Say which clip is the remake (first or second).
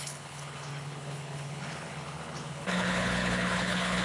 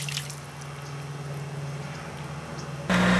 first